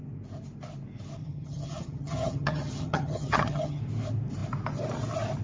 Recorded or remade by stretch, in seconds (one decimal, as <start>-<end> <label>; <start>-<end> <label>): 0.0-1.2 recorded; 1.2-3.8 remade; 3.8-5.4 recorded